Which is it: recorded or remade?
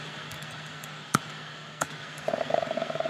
remade